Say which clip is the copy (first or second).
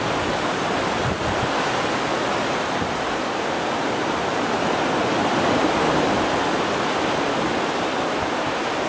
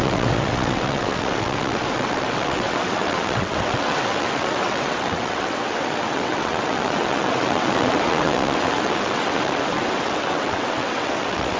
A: second